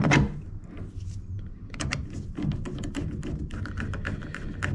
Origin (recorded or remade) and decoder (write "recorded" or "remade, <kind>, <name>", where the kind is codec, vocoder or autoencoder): recorded